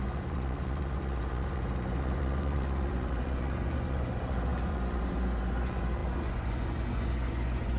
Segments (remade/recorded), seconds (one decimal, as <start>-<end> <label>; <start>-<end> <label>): 0.0-7.8 remade